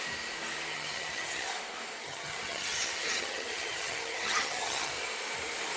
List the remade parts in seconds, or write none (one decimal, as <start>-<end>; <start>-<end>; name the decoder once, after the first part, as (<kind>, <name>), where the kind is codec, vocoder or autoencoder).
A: 0.7-1.5 (vocoder, HiFi-GAN); 2.0-4.9